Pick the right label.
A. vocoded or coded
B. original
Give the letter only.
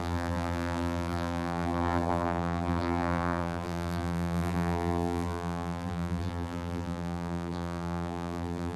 A